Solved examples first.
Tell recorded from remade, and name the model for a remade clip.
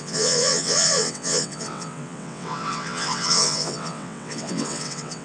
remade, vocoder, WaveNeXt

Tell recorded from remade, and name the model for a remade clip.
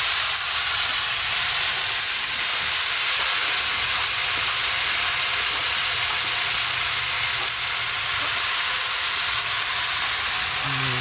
recorded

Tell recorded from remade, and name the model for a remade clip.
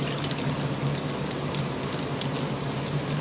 recorded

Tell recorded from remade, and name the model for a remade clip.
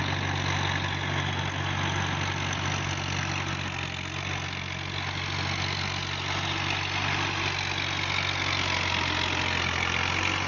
recorded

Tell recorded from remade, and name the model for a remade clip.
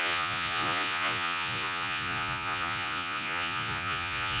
remade, vocoder, Vocos